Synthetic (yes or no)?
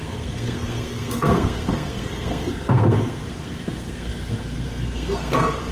yes